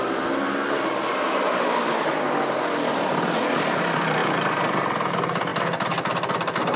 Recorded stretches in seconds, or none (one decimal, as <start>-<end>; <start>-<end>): 0.0-6.8